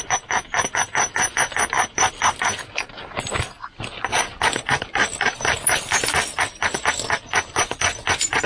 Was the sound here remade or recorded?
recorded